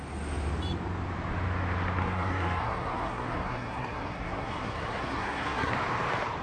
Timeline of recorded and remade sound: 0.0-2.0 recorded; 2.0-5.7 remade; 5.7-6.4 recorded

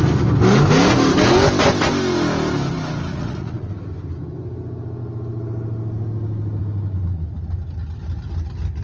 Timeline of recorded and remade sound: 0.0-3.1 recorded; 3.1-3.7 remade; 3.7-8.8 recorded